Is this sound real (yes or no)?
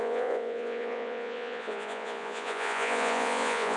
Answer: no